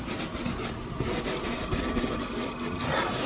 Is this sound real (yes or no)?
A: yes